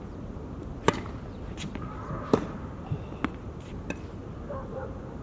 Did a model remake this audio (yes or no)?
no